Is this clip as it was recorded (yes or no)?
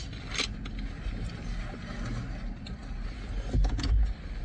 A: yes